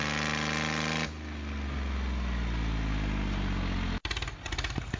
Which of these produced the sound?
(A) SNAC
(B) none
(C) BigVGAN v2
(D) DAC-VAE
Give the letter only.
B